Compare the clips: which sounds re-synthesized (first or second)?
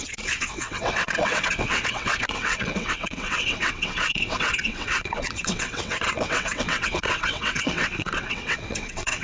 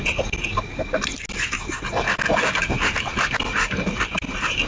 first